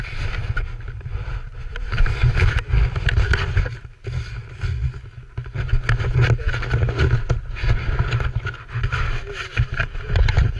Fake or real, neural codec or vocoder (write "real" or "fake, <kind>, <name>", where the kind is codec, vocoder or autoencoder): real